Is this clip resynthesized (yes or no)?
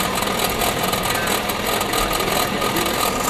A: no